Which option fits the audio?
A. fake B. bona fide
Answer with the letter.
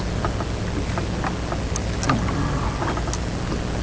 B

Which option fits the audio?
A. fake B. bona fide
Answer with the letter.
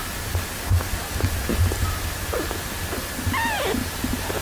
B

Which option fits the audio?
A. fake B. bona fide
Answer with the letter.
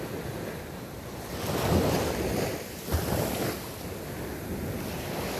B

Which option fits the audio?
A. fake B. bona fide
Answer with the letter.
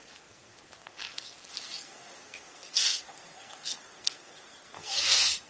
A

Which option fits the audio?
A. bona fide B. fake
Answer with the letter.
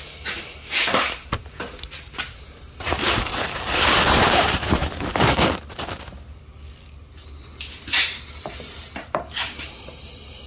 A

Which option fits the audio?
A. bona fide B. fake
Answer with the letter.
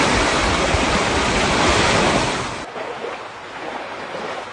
A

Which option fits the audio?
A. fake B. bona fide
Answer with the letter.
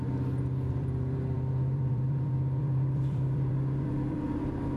A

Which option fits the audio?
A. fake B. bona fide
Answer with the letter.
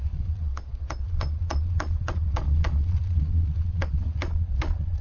A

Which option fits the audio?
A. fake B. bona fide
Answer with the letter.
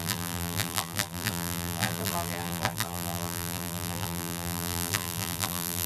A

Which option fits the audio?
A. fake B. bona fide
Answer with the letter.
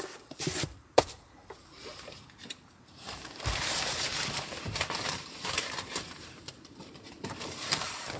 A